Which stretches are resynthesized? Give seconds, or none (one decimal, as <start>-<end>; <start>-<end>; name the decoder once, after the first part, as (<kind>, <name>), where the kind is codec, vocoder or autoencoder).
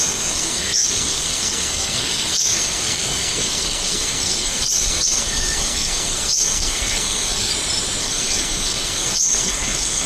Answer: 0.0-7.5 (codec, SNAC); 8.0-10.1